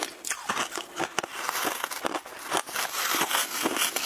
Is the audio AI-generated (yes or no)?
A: no